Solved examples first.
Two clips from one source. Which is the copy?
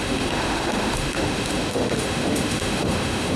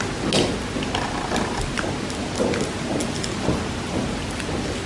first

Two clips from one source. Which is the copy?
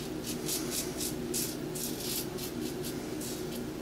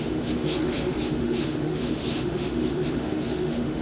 second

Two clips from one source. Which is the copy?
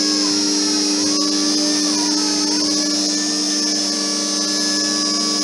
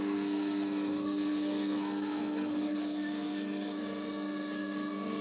second